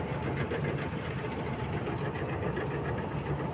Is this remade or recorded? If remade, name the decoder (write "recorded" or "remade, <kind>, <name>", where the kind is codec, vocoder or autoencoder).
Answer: recorded